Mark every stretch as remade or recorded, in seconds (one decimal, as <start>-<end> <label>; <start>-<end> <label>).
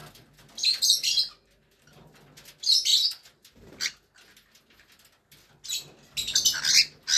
0.0-7.2 recorded